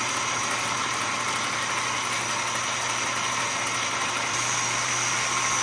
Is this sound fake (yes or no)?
no